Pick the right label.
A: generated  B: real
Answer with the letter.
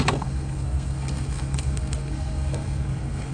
A